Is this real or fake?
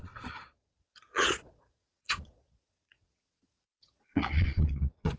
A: fake